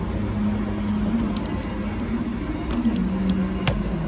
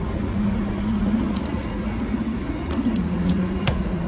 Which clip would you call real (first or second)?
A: first